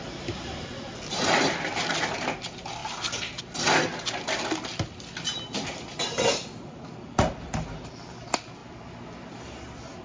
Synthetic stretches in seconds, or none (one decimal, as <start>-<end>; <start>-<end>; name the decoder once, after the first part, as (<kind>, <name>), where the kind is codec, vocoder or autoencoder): none